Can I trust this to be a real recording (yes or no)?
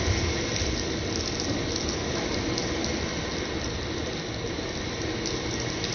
yes